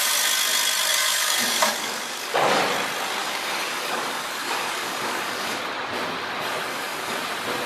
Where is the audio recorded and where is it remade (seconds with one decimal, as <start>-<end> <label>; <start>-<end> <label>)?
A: 0.0-0.9 recorded; 0.9-2.6 remade; 2.6-3.2 recorded; 3.2-5.6 remade; 5.6-6.7 recorded; 6.7-7.2 remade; 7.2-7.7 recorded